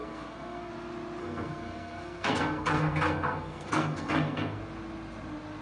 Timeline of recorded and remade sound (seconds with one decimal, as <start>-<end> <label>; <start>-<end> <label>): 0.0-0.7 remade; 0.7-1.2 recorded; 1.2-4.6 remade; 4.6-5.6 recorded